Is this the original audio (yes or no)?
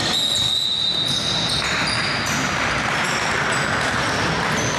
yes